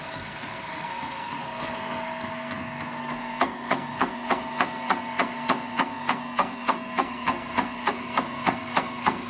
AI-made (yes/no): yes